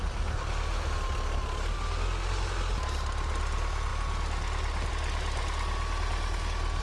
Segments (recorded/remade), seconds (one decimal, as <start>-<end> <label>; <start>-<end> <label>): 0.0-6.8 recorded

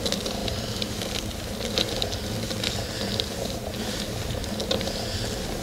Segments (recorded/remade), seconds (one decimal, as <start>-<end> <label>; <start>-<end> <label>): 0.0-5.6 recorded

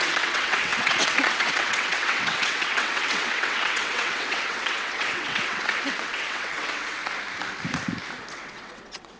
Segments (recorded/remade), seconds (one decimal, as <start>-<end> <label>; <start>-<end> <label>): 0.0-7.0 remade; 7.0-8.3 recorded; 8.3-9.2 remade

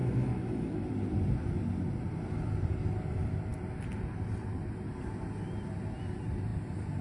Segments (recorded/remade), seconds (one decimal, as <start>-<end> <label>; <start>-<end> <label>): 0.0-0.9 remade; 0.9-7.0 recorded

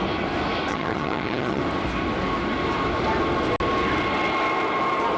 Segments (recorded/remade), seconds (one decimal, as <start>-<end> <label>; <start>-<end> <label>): 0.0-0.7 recorded; 0.7-1.6 remade; 1.6-5.2 recorded

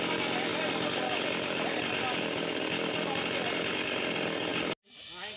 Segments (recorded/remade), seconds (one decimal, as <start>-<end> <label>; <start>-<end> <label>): 0.0-0.5 recorded; 0.5-3.7 remade; 3.7-5.4 recorded

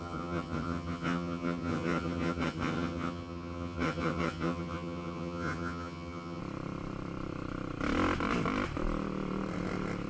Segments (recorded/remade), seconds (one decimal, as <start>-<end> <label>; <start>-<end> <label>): 0.0-6.4 remade; 6.4-10.1 recorded

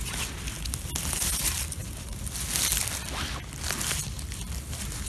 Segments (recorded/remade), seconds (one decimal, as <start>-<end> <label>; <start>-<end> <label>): 0.0-5.1 recorded